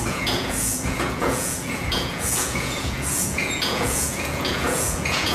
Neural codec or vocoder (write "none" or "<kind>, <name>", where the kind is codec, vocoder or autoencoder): vocoder, Vocos